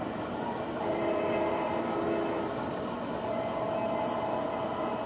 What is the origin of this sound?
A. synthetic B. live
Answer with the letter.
B